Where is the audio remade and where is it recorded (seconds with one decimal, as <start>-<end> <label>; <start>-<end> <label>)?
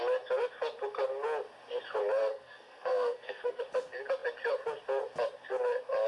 0.0-2.2 recorded; 2.2-3.6 remade; 3.6-6.1 recorded